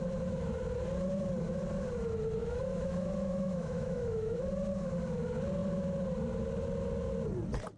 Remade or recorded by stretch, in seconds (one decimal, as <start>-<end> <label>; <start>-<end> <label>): 0.0-2.4 recorded; 2.4-4.4 remade; 4.4-7.8 recorded

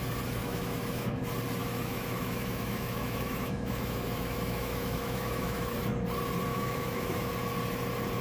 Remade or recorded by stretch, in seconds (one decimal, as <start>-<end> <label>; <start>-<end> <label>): 0.0-0.4 recorded; 0.4-1.2 remade; 1.2-1.6 recorded; 1.6-5.7 remade; 5.7-6.5 recorded; 6.5-7.3 remade; 7.3-8.2 recorded

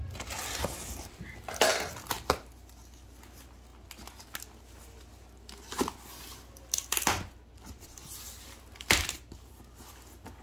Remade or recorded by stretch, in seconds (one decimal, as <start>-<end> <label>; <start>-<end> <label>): 0.0-10.4 recorded